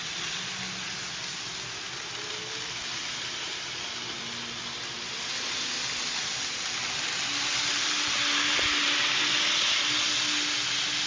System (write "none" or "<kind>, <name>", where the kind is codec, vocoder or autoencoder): none